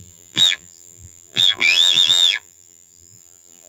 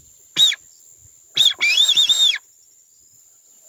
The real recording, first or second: second